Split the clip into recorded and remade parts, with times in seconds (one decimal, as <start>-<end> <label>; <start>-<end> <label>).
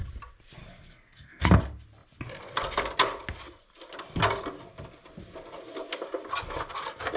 0.0-0.6 recorded; 0.6-1.6 remade; 1.6-7.2 recorded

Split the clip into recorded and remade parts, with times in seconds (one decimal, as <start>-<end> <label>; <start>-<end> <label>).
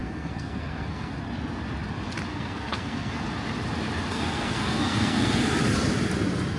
0.0-1.1 remade; 1.1-2.3 recorded; 2.3-3.2 remade; 3.2-4.1 recorded; 4.1-5.4 remade; 5.4-6.6 recorded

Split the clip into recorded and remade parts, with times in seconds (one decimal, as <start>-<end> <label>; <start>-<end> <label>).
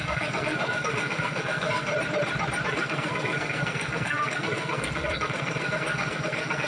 0.0-1.9 remade; 1.9-2.7 recorded; 2.7-6.7 remade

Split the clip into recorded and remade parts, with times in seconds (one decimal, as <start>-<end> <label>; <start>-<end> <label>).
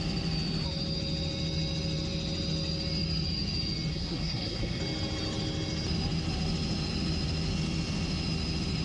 0.0-3.9 recorded; 3.9-4.8 remade; 4.8-8.8 recorded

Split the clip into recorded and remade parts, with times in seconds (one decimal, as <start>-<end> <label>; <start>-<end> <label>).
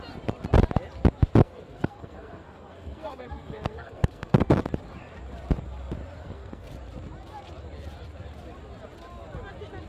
0.0-1.4 recorded; 1.4-4.6 remade; 4.6-6.2 recorded; 6.2-6.7 remade; 6.7-9.9 recorded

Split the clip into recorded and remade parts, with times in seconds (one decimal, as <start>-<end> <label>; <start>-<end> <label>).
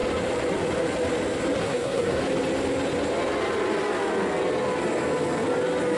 0.0-1.6 recorded; 1.6-2.2 remade; 2.2-6.0 recorded